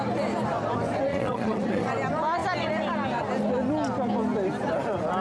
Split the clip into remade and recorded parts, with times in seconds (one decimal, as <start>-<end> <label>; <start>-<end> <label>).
0.0-1.1 recorded; 1.1-1.9 remade; 1.9-5.2 recorded